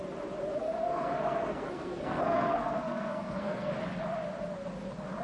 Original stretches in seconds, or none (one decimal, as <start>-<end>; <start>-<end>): 0.0-0.6; 3.7-5.2